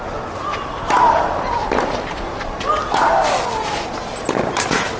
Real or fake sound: real